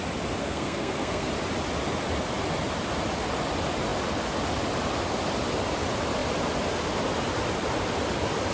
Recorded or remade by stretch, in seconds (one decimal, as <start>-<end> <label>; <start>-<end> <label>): 0.0-0.4 recorded; 0.4-1.3 remade; 1.3-8.5 recorded